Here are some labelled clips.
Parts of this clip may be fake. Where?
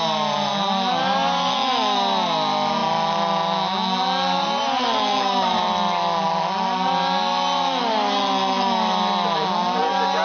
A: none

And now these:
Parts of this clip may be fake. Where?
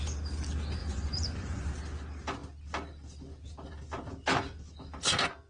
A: 0.8-1.7 (vocoder, Vocos)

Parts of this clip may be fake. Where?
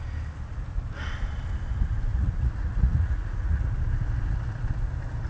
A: 2.1-3.7 (vocoder, Vocos)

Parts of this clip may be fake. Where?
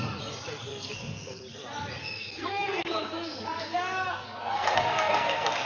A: 0.7-1.4 (codec, SNAC); 2.0-5.7